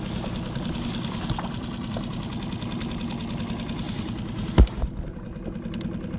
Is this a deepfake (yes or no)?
no